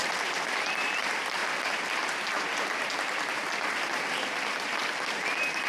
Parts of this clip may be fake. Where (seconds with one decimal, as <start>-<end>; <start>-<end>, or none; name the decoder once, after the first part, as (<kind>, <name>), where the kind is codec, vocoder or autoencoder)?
none